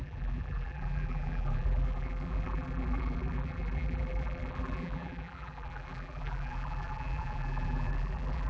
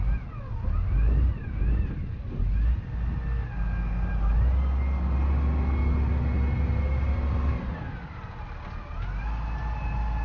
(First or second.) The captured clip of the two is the second